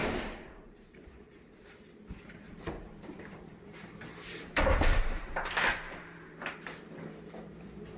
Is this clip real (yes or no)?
no